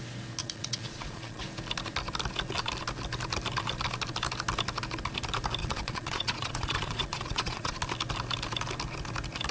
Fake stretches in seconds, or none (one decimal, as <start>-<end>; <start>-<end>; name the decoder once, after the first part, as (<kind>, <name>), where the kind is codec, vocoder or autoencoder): 0.4-1.4 (vocoder, Vocos); 5.6-7.8

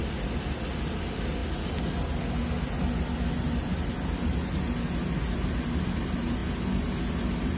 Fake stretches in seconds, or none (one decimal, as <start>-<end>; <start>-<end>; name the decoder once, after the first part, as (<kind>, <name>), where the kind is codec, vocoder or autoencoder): none